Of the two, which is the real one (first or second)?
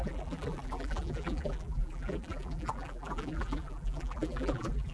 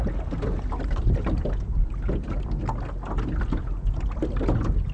second